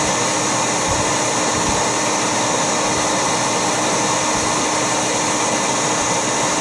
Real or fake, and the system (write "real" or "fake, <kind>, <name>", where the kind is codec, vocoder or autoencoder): real